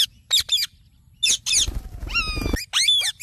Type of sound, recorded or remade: recorded